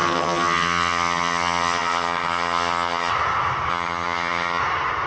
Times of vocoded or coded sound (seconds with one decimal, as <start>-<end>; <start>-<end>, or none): 0.0-3.1; 3.7-4.6